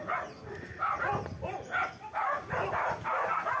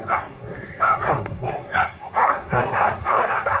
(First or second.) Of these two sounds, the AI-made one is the second